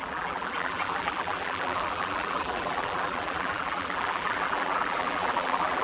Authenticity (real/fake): fake